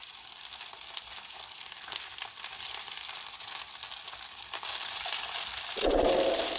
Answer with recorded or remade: recorded